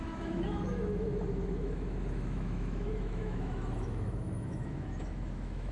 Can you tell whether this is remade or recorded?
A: remade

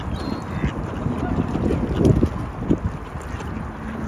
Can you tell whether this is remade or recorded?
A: recorded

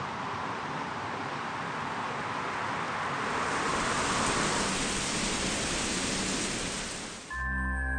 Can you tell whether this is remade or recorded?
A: recorded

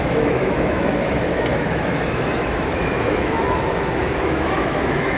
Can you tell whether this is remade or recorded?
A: remade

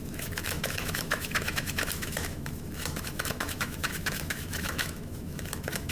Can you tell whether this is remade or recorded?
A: remade